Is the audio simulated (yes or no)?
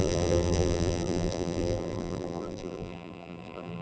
yes